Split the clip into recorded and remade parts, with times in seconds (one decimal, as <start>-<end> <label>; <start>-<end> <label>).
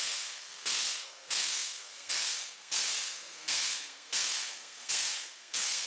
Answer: 0.0-5.9 remade